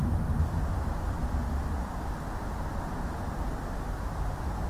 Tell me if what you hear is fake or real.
real